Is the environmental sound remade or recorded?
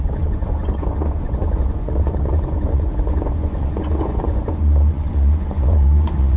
remade